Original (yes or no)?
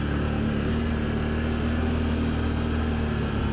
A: yes